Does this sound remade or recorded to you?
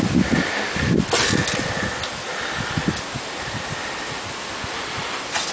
recorded